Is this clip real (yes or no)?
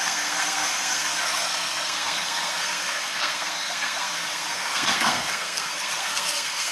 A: no